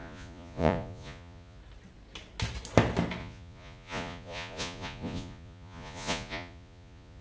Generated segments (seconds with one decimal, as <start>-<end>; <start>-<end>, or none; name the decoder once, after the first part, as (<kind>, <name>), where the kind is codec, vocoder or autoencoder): 0.0-1.6 (vocoder, Vocos); 3.2-7.2